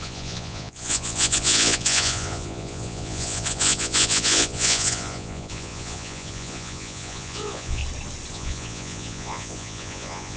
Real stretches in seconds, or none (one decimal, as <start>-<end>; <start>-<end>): 7.8-8.3

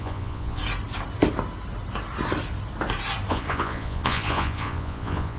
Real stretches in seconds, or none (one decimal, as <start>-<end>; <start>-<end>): 0.6-3.3

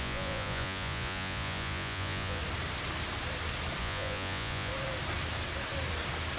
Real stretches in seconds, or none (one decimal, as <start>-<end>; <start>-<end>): 2.4-3.8; 4.7-6.4

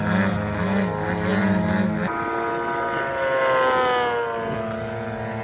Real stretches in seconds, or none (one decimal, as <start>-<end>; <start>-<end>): 0.0-5.4

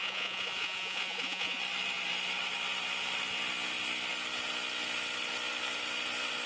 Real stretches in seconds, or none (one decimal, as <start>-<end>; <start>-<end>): 1.6-6.5

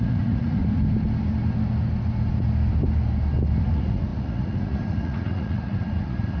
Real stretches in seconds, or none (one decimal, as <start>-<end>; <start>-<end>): 0.6-3.6

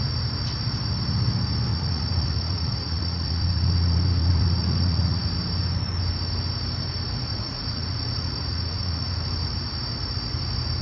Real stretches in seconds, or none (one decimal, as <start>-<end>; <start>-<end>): 0.0-1.7; 5.2-7.3; 9.2-10.8